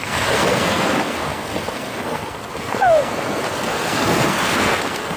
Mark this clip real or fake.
fake